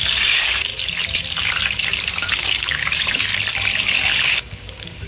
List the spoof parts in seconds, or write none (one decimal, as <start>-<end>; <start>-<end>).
0.0-0.7; 2.1-3.3; 4.4-5.1